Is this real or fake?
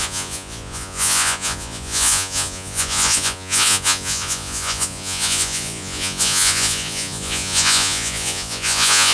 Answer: fake